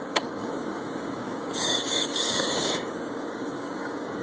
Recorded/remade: remade